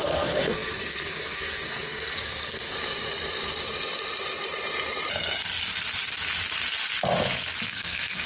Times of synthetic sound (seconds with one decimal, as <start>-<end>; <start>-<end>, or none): 0.0-2.7; 7.7-8.3